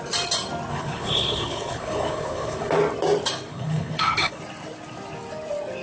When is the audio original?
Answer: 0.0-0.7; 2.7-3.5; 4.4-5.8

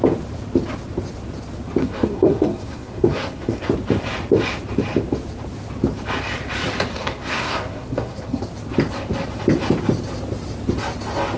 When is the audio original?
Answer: 0.0-1.8; 3.7-6.9; 8.4-11.4

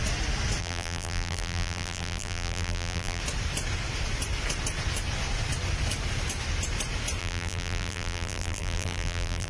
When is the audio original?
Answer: 0.0-0.6; 3.2-7.2

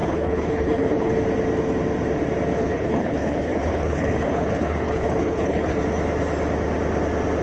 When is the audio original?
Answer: 1.1-2.6; 5.8-7.4

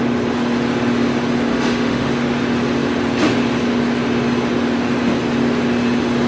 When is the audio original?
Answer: 0.0-1.5; 2.1-6.3